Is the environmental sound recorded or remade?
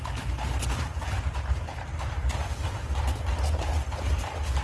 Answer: recorded